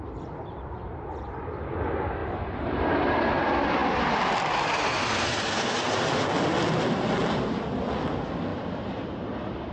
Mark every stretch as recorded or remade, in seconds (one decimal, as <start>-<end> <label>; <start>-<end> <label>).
0.0-2.2 recorded; 2.2-3.1 remade; 3.1-8.5 recorded; 8.5-9.7 remade